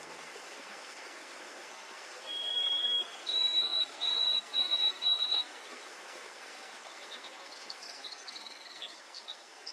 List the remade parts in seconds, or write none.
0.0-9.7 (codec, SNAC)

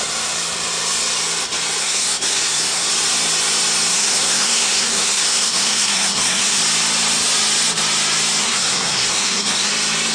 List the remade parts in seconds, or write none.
1.8-2.9 (codec, SNAC); 3.9-6.6; 8.4-9.7